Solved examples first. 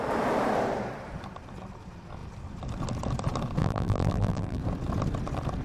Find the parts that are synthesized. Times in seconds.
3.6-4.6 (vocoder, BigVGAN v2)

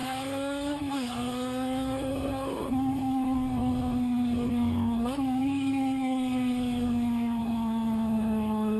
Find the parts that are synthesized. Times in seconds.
0.0-8.8 (codec, SNAC)

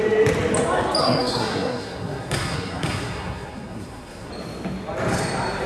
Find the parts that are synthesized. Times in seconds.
1.0-4.3 (codec, SNAC)

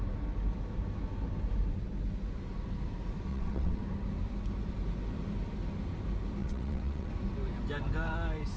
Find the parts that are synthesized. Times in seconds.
3.3-3.8 (vocoder, WaveNeXt); 6.4-7.1

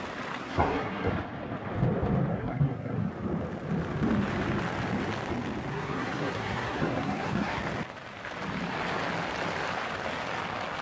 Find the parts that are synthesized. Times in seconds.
0.4-1.1 (codec, SNAC); 2.3-3.1; 5.7-7.6

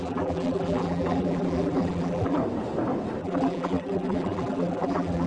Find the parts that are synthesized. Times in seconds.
0.0-2.4 (vocoder, BigVGAN v2); 3.2-5.3

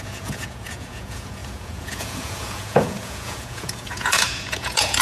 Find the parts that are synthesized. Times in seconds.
0.0-5.0 (vocoder, Vocos)